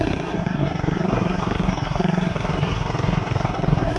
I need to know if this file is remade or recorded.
remade